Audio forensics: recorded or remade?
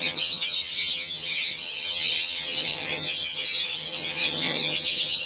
remade